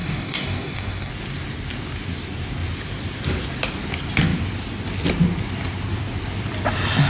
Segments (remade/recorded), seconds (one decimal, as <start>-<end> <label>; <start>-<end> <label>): 0.0-1.1 remade; 1.1-7.1 recorded